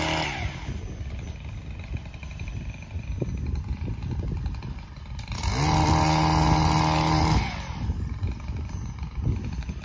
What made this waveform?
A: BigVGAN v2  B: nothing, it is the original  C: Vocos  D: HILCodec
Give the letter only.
B